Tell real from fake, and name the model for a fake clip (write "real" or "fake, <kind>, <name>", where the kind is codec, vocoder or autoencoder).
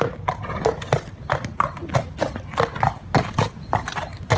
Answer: real